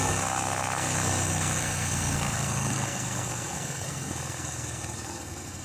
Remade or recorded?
remade